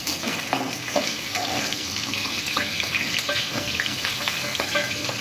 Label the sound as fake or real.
fake